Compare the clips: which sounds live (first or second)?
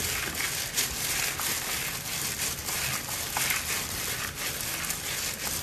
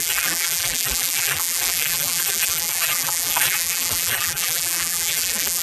first